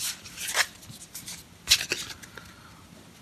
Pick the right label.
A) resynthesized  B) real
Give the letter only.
B